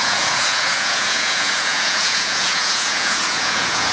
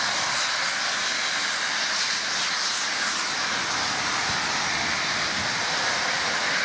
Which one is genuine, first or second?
second